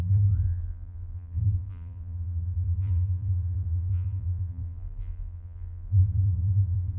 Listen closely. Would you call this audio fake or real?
fake